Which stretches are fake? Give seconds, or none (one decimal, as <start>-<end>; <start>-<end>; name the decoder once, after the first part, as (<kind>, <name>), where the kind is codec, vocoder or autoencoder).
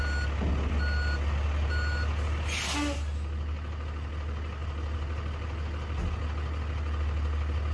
none